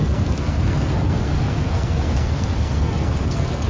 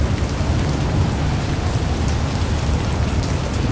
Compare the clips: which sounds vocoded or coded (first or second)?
first